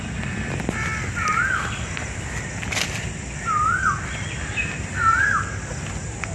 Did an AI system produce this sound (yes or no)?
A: no